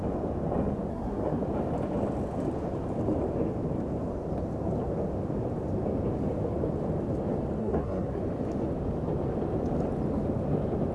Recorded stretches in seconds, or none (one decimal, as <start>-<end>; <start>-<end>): 0.0-0.9; 1.4-7.6; 8.2-10.9